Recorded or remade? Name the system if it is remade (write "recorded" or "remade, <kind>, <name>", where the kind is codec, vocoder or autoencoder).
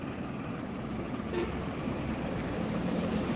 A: remade, vocoder, BigVGAN v2